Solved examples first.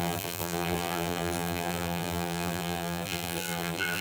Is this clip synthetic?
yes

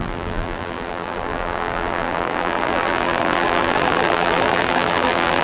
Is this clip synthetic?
yes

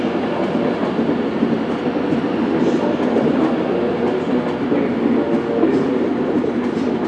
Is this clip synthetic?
no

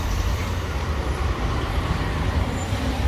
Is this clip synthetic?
yes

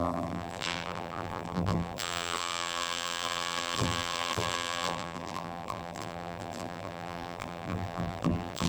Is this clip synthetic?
yes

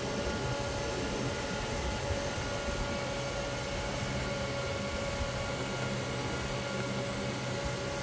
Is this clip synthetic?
no